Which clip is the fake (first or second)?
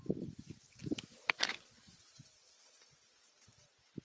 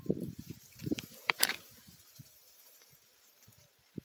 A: second